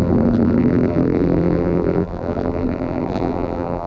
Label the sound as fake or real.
fake